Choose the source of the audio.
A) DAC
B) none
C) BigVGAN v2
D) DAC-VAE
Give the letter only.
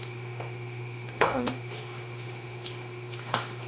D